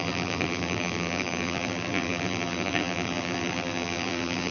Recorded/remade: remade